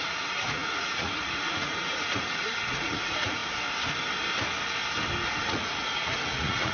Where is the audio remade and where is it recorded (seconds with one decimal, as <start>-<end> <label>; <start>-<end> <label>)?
0.0-3.4 remade; 3.4-5.4 recorded; 5.4-6.7 remade